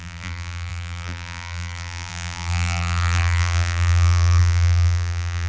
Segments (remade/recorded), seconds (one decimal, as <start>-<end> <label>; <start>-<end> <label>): 0.0-5.5 remade